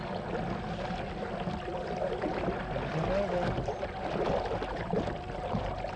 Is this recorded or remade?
recorded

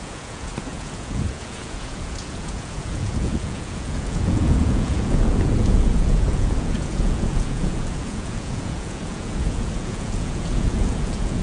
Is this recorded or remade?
remade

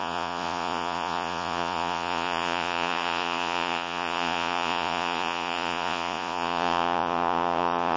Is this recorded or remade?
remade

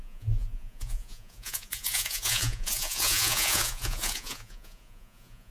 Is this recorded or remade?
remade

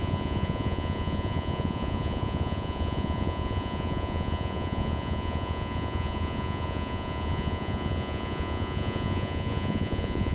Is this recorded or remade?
remade